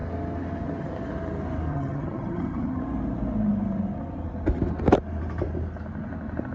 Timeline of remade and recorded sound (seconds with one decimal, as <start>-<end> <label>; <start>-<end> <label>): 0.0-1.7 recorded; 1.7-2.8 remade; 2.8-6.5 recorded